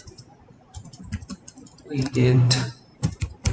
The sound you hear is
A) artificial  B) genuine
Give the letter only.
A